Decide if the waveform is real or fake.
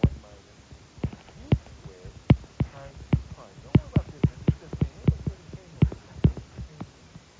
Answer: real